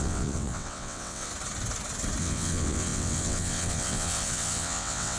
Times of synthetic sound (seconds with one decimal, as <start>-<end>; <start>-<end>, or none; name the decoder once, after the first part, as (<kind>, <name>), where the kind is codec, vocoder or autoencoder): 0.0-1.3 (vocoder, WaveNeXt); 2.2-5.2